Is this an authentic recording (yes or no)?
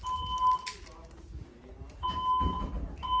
yes